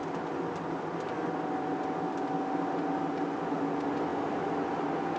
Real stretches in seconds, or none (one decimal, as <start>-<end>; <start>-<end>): 0.0-5.2